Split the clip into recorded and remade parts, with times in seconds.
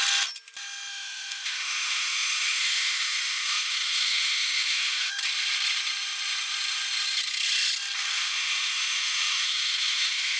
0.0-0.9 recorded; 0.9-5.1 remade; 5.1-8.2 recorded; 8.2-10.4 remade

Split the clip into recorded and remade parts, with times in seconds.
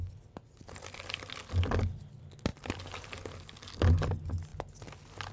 0.0-5.3 recorded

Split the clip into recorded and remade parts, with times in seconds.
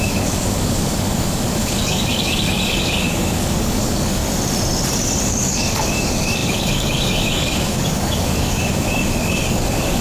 0.0-4.2 remade; 4.2-5.2 recorded; 5.2-10.0 remade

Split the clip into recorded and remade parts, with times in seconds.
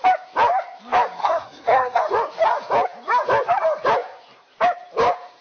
0.0-1.2 recorded; 1.2-2.0 remade; 2.0-5.4 recorded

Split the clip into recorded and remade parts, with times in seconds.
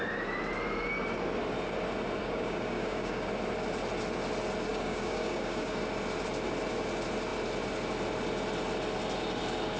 0.0-2.2 recorded; 2.2-3.3 remade; 3.3-4.7 recorded; 4.7-5.8 remade; 5.8-9.8 recorded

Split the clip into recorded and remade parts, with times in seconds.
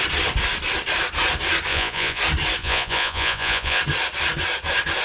0.0-1.7 recorded; 1.7-2.2 remade; 2.2-2.6 recorded; 2.6-3.8 remade; 3.8-5.0 recorded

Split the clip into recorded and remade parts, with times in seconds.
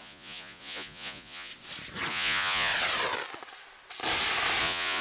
0.0-1.5 remade; 1.5-2.1 recorded; 2.1-2.7 remade; 2.7-4.6 recorded; 4.6-5.0 remade